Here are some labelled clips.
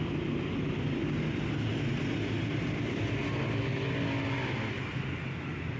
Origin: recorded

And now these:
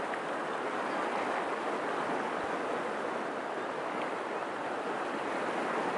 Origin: recorded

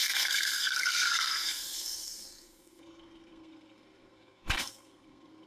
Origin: remade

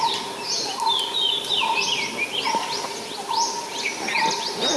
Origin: recorded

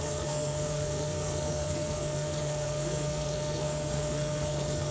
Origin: remade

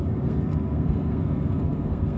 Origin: remade